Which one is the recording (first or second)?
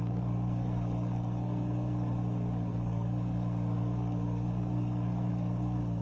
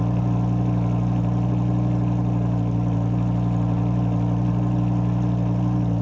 second